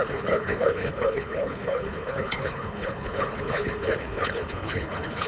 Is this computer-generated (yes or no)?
yes